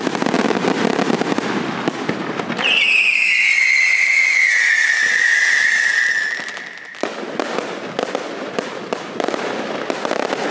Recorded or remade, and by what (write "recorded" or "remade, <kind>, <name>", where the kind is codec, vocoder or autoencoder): recorded